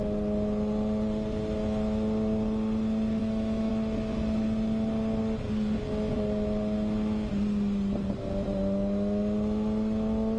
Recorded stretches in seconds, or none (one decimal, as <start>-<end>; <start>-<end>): 0.0-3.2; 3.7-10.4